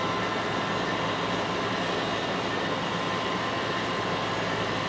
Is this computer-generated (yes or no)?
no